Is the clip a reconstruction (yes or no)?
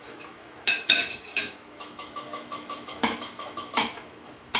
yes